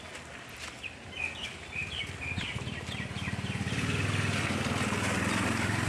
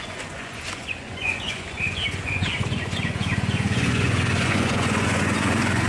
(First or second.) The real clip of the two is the first